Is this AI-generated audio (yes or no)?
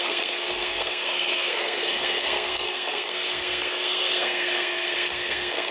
yes